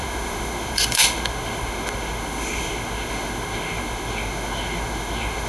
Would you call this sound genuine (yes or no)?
no